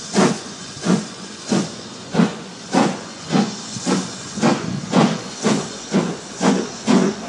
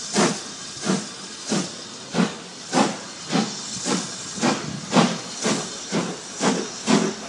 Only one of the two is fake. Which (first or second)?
first